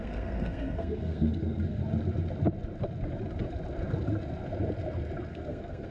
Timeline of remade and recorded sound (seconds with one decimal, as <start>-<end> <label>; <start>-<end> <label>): 0.0-1.8 remade; 1.8-5.3 recorded; 5.3-5.9 remade